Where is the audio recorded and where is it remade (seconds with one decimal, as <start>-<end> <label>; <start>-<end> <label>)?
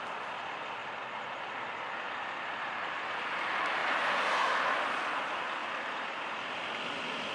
0.0-3.8 recorded; 3.8-4.5 remade; 4.5-5.6 recorded; 5.6-6.8 remade; 6.8-7.3 recorded